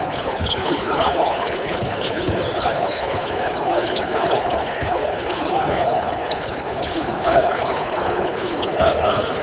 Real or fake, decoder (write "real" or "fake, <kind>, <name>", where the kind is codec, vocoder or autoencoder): fake, codec, HILCodec